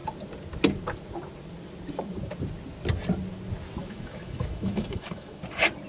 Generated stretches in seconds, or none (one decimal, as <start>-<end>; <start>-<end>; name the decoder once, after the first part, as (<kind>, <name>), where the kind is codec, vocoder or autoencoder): 3.8-5.4 (autoencoder, DAC-VAE)